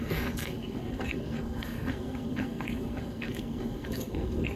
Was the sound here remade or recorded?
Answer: remade